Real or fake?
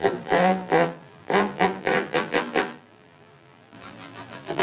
fake